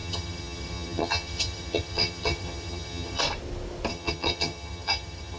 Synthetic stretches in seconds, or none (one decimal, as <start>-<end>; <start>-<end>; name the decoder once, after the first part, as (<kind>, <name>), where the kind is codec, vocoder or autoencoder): 0.0-3.2 (vocoder, HiFi-GAN); 3.9-5.4

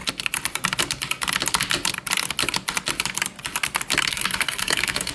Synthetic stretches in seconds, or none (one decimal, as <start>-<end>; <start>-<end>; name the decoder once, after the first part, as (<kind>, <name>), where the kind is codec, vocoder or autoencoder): 4.1-5.1 (codec, SNAC)

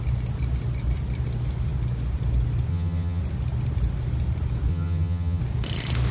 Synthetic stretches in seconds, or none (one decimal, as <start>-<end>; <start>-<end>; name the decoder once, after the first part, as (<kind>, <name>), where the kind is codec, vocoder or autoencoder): 2.7-3.2 (vocoder, HiFi-GAN); 4.7-5.4

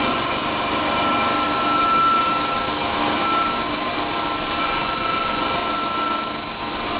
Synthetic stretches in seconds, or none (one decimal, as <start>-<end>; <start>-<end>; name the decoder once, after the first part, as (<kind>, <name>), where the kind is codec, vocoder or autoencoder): 0.0-0.4 (vocoder, Vocos); 4.6-5.6

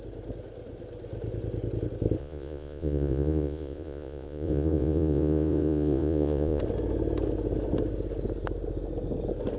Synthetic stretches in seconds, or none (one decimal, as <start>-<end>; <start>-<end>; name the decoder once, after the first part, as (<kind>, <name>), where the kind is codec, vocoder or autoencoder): 2.2-6.6 (vocoder, Vocos)